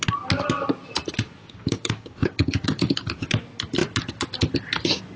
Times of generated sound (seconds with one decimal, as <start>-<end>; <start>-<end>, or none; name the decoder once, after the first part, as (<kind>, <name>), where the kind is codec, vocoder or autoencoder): 1.4-3.3 (codec, DAC)